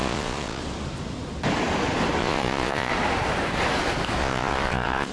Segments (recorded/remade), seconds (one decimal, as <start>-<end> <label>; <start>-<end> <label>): 0.0-0.6 remade; 0.6-2.2 recorded; 2.2-2.9 remade; 2.9-4.2 recorded; 4.2-5.1 remade

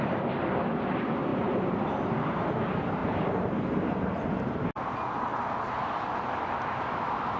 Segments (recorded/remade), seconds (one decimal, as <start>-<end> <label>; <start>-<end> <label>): 0.0-1.3 recorded; 1.3-2.4 remade; 2.4-3.0 recorded; 3.0-4.1 remade; 4.1-7.4 recorded

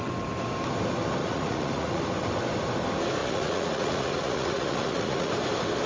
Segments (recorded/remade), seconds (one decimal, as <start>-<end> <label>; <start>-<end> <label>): 0.0-1.2 recorded; 1.2-2.0 remade; 2.0-3.2 recorded; 3.2-5.3 remade; 5.3-5.9 recorded